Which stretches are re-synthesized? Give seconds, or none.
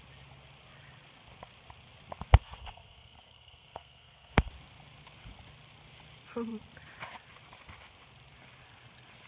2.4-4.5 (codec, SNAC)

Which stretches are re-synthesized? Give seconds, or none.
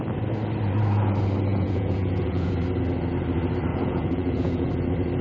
1.5-2.5 (vocoder, Vocos); 3.7-4.7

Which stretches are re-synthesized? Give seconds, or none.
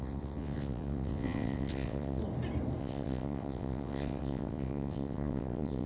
0.0-2.2 (vocoder, WaveNeXt); 2.8-5.9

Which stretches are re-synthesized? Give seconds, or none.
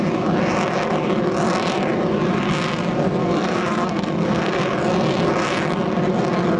3.2-4.6 (codec, SNAC)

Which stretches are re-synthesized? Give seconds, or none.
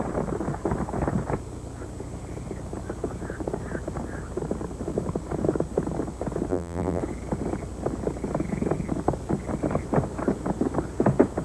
6.5-7.0 (vocoder, BigVGAN v2)